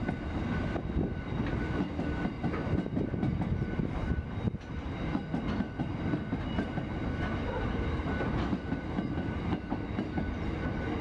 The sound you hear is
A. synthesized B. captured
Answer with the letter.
B